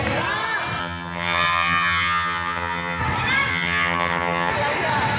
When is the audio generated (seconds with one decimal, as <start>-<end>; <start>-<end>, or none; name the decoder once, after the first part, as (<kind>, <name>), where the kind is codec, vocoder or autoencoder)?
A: 0.8-3.0 (vocoder, HiFi-GAN); 3.5-4.5